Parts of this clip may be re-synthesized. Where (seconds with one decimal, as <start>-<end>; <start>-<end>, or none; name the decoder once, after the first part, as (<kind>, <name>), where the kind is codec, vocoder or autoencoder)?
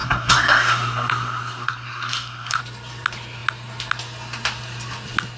0.0-2.6 (codec, SNAC)